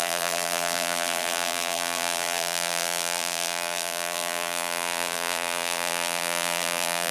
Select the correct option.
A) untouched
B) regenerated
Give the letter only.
B